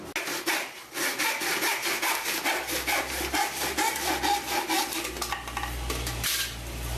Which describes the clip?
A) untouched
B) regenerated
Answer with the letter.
A